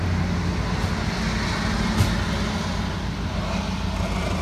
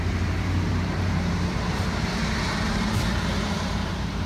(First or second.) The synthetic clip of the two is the second